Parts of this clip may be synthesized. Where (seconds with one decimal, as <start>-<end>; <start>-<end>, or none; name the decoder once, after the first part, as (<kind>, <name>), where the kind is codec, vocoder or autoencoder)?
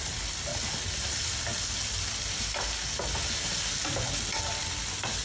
0.0-0.5 (vocoder, BigVGAN v2); 1.1-1.5; 4.6-5.2